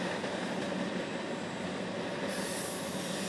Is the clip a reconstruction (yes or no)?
no